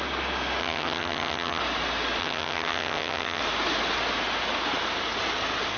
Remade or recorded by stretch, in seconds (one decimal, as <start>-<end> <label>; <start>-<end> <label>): 0.0-0.6 recorded; 0.6-1.6 remade; 1.6-2.2 recorded; 2.2-3.4 remade; 3.4-5.8 recorded